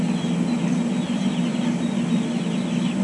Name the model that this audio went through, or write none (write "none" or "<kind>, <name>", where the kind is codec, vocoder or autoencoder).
none